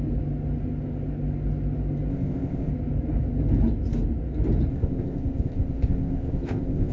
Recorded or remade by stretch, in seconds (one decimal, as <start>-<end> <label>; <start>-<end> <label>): 0.0-2.1 recorded; 2.1-2.7 remade; 2.7-4.7 recorded; 4.7-6.9 remade